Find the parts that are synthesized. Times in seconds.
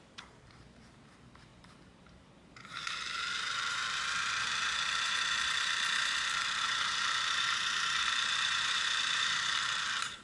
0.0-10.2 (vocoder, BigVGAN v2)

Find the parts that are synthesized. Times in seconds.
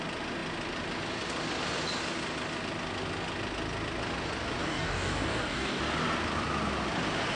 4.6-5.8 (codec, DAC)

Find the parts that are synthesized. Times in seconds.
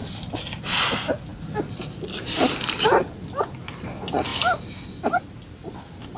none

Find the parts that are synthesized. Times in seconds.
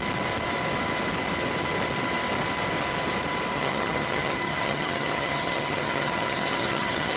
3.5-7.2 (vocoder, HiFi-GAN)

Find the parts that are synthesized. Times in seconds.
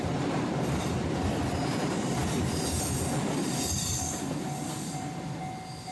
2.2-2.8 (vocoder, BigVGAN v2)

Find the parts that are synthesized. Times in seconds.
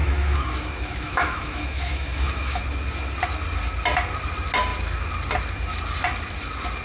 0.0-2.6 (autoencoder, DAC-VAE)